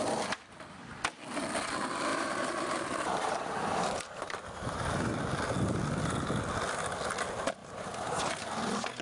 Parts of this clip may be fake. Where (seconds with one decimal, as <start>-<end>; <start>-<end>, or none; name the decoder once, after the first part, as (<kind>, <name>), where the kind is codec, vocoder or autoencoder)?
2.1-5.1 (vocoder, BigVGAN v2); 7.6-8.3